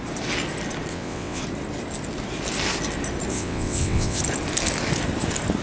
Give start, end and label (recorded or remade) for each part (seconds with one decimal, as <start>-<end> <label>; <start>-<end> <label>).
0.0-0.9 recorded; 0.9-1.4 remade; 1.4-3.3 recorded; 3.3-4.2 remade; 4.2-5.6 recorded